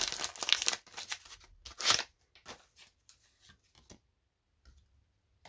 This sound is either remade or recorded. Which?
recorded